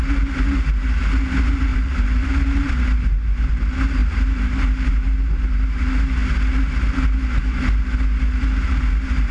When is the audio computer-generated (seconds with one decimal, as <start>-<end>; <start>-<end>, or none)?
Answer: 1.7-3.5; 4.0-4.9